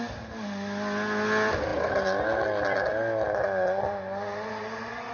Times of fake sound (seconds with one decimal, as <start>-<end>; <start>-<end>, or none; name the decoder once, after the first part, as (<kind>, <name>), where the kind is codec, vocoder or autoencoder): none